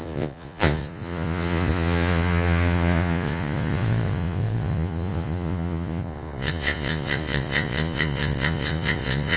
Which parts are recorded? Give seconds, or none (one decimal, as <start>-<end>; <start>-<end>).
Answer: none